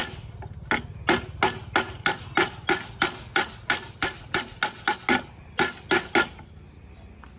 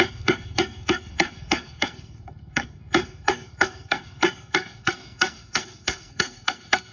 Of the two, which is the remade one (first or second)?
second